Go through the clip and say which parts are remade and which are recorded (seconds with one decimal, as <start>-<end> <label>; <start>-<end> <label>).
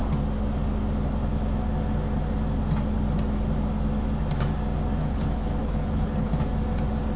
0.0-5.0 recorded; 5.0-6.3 remade; 6.3-7.2 recorded